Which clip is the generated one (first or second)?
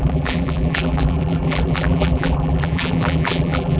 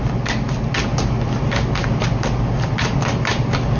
first